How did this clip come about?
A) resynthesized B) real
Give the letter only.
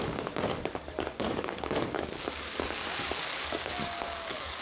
A